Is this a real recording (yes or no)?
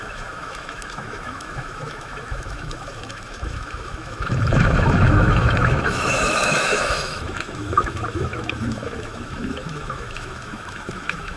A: no